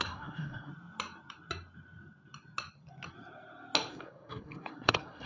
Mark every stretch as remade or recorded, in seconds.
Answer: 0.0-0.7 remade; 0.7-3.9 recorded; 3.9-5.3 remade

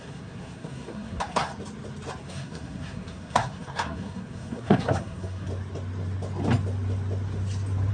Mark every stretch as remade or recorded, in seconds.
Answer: 0.0-1.5 remade; 1.5-2.2 recorded; 2.2-5.5 remade; 5.5-7.9 recorded